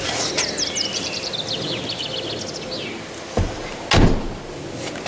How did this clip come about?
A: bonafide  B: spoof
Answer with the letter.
A